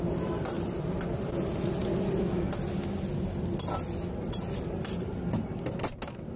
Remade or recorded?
recorded